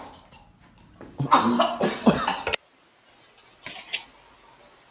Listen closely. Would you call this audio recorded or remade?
recorded